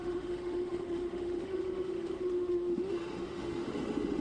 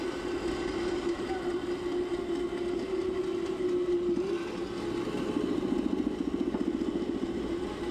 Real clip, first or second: second